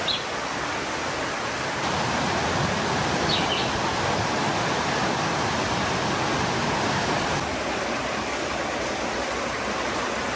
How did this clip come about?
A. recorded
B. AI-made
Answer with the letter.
A